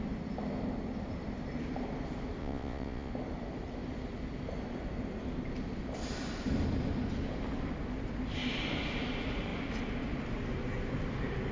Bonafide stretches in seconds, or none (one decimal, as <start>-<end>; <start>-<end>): 0.0-2.4; 3.1-11.5